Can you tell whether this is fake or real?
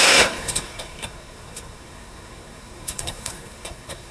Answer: fake